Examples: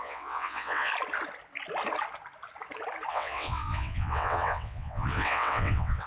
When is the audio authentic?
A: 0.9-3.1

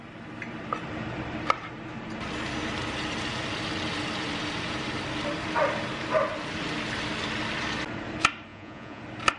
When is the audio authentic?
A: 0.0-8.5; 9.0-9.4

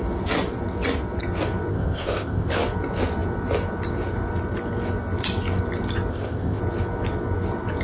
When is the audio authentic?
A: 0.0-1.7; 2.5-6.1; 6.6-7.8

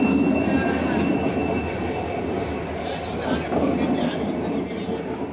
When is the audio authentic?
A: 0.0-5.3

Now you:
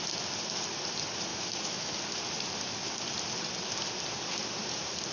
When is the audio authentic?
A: 0.0-1.3; 1.9-5.1

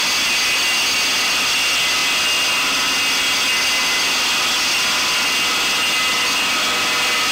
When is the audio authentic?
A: 0.0-7.3